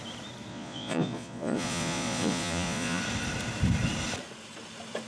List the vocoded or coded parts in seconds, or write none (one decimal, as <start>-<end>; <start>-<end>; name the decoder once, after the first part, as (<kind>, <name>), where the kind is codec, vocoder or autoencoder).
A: 0.5-3.0 (vocoder, Vocos)